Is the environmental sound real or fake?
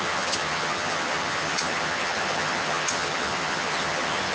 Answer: fake